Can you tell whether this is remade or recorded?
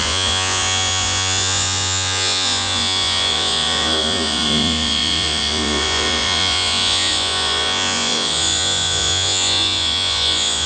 remade